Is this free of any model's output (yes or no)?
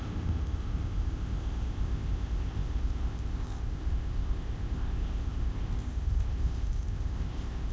no